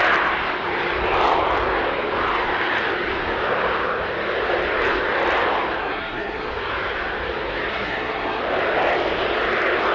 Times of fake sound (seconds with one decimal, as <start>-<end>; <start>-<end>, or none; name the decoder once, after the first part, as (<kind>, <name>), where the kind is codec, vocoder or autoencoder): 5.8-6.5 (codec, SNAC); 7.7-8.4